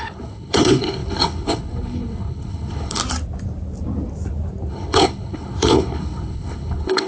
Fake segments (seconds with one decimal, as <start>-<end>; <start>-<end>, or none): 0.0-3.0; 4.7-7.1